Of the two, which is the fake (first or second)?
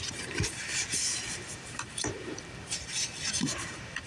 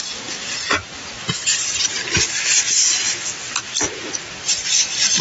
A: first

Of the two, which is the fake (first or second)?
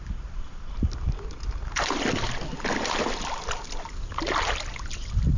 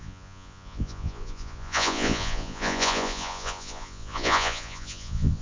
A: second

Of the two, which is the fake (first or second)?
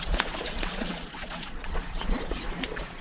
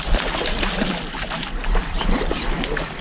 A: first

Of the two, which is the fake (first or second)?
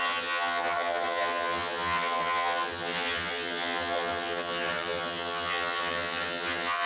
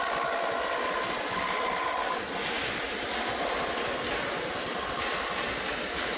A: first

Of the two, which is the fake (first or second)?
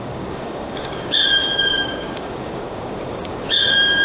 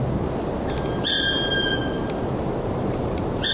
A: first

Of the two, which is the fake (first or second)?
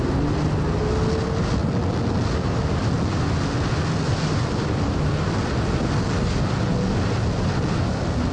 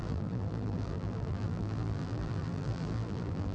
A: second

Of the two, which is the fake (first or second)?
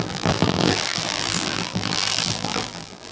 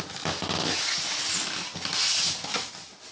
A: first